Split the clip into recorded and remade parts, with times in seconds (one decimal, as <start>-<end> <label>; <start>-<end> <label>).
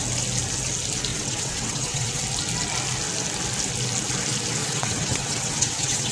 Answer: 0.0-1.1 recorded; 1.1-2.2 remade; 2.2-4.6 recorded; 4.6-6.1 remade